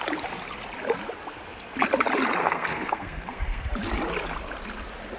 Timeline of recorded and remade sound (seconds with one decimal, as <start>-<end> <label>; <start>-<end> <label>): 0.0-2.4 recorded; 2.4-3.7 remade; 3.7-5.2 recorded